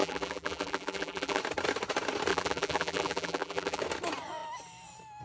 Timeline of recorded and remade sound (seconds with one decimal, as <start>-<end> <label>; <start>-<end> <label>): 0.0-1.4 remade; 1.4-2.3 recorded; 2.3-3.8 remade; 3.8-5.2 recorded